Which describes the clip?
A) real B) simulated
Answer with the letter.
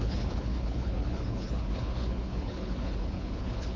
B